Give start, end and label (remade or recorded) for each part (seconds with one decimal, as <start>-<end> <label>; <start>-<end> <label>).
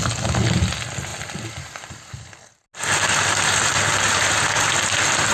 0.0-5.3 recorded